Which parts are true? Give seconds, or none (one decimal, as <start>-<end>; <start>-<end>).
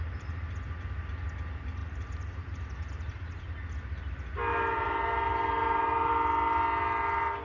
0.0-1.8; 2.3-4.5; 6.1-7.4